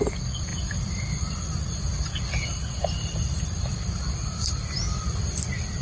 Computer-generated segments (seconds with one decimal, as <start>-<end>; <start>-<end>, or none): none